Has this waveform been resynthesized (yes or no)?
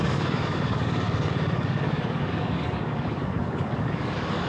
yes